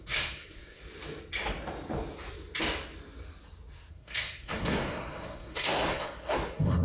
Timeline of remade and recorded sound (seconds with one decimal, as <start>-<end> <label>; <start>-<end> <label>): 0.0-0.8 remade; 0.8-3.9 recorded; 3.9-6.8 remade